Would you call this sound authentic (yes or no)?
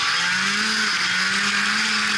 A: yes